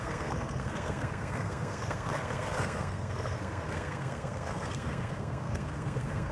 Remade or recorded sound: remade